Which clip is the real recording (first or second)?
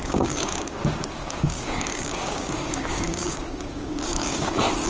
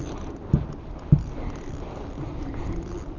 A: second